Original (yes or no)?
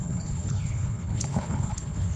no